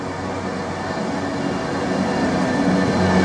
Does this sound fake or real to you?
real